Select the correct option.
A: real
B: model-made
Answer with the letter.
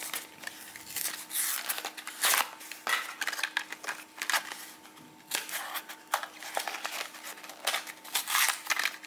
A